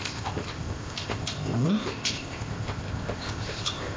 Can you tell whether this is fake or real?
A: fake